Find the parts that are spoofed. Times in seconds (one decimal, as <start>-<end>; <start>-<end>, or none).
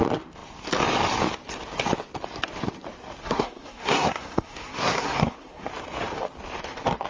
3.2-5.7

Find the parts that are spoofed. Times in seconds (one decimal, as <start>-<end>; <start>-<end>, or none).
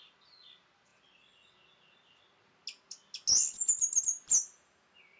none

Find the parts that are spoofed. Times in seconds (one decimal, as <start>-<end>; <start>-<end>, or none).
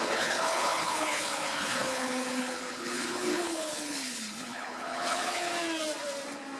0.0-5.5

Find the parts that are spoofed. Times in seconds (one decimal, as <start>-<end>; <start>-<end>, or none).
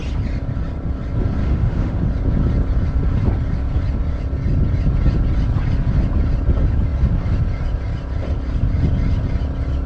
1.4-2.0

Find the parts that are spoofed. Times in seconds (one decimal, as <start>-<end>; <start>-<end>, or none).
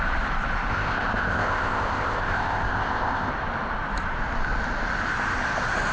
0.7-3.3